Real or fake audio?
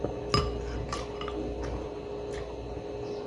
real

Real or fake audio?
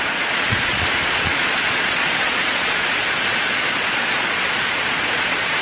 fake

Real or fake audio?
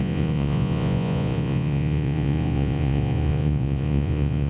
fake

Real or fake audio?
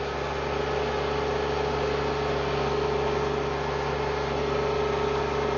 real